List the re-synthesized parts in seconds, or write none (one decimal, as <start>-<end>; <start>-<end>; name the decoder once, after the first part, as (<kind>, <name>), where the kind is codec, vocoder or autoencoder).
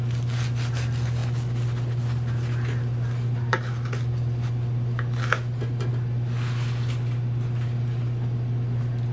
none